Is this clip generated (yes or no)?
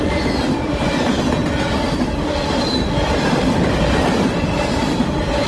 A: no